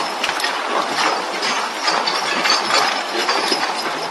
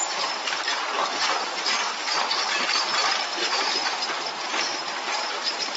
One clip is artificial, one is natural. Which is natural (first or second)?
first